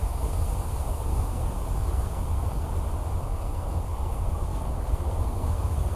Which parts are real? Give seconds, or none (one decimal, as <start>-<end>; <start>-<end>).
2.7-3.2